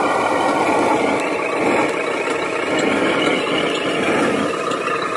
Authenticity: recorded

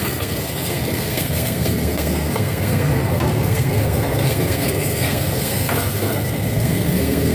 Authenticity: remade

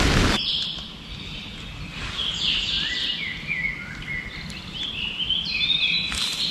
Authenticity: recorded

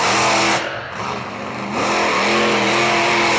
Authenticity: recorded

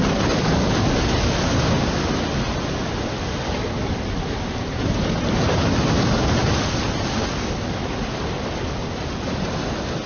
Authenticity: recorded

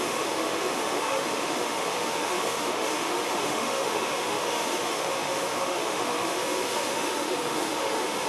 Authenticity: remade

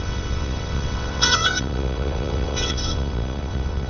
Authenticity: remade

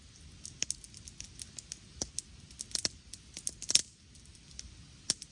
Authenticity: recorded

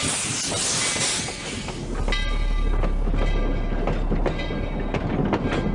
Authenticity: recorded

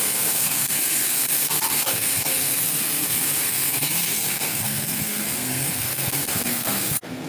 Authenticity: remade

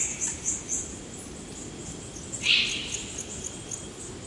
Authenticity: recorded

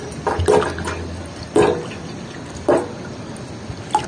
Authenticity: recorded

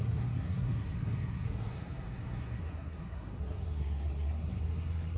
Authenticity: remade